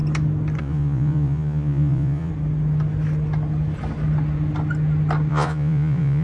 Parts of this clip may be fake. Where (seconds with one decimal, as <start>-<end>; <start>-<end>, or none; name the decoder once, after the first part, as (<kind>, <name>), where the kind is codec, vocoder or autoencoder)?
0.6-2.3 (vocoder, Vocos); 5.3-6.2